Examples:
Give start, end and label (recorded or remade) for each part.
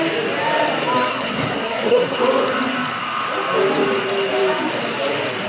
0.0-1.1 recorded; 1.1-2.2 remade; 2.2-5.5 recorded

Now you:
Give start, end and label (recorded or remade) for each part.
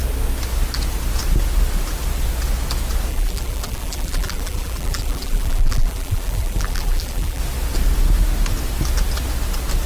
0.0-3.1 recorded; 3.1-7.4 remade; 7.4-9.9 recorded